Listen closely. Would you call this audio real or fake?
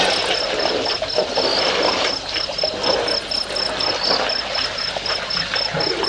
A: real